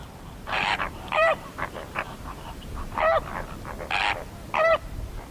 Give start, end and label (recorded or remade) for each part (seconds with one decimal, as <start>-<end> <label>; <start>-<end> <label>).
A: 0.0-3.2 remade; 3.2-4.7 recorded; 4.7-5.3 remade